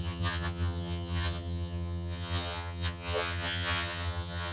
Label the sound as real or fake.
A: fake